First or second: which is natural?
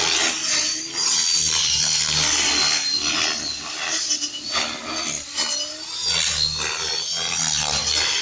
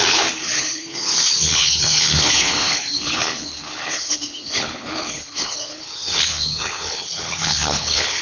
first